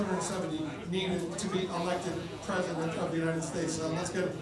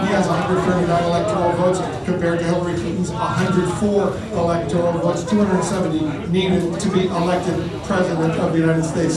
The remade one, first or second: first